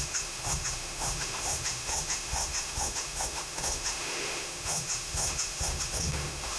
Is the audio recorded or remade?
remade